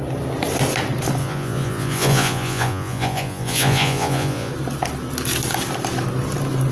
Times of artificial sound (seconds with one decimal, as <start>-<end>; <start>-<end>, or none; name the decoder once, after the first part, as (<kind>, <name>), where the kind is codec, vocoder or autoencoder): 1.2-4.5 (vocoder, Vocos)